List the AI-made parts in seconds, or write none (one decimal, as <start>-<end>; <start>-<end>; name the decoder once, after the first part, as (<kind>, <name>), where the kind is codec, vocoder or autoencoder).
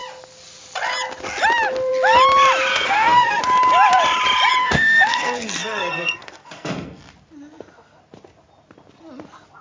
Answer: 2.7-3.4 (codec, SNAC); 4.6-7.0